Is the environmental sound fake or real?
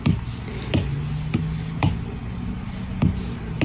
real